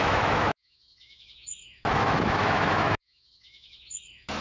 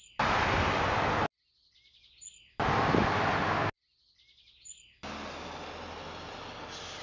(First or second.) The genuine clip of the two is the second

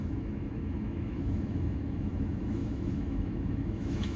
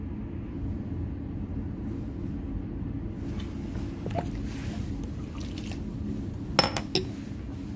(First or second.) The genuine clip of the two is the second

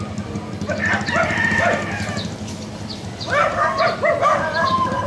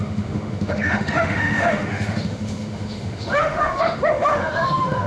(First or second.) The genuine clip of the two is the first